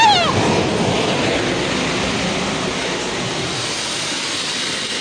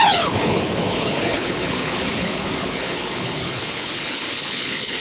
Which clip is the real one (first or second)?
first